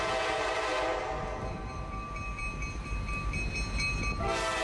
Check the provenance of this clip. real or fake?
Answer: real